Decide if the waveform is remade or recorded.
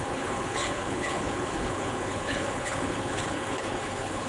remade